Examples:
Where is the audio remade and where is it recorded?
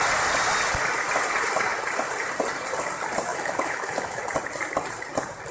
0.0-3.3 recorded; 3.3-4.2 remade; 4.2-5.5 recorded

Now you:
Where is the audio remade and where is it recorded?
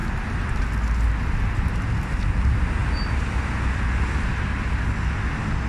0.0-5.7 recorded